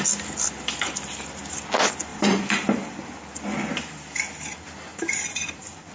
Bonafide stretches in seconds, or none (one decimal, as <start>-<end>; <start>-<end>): 0.0-2.1; 3.1-4.9